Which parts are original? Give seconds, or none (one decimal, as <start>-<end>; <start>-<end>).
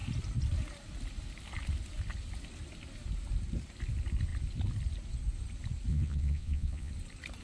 0.0-5.9; 6.9-7.4